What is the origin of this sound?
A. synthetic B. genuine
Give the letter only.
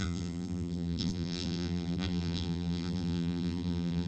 A